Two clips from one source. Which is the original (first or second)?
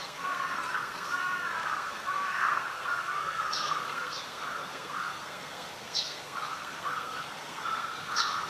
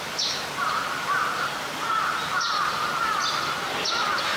second